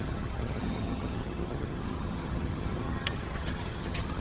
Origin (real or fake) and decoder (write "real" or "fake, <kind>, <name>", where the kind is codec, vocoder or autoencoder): fake, vocoder, HiFi-GAN